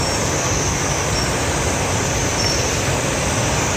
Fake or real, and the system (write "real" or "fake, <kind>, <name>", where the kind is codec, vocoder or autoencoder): real